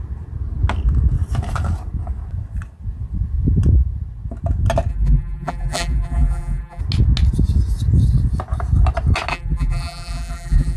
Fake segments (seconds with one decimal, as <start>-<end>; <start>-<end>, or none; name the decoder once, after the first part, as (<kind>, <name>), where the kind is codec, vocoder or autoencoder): 4.9-6.8 (vocoder, BigVGAN v2); 9.3-10.8